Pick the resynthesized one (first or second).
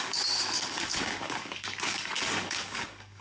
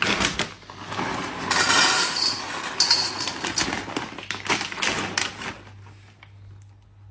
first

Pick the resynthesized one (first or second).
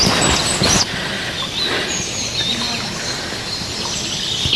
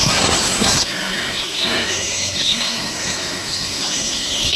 second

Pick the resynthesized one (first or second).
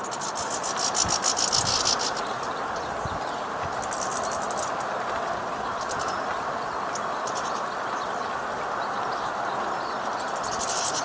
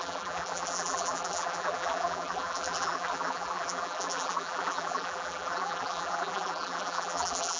second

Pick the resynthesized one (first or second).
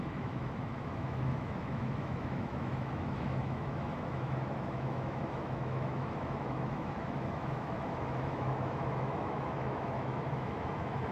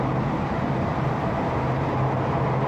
first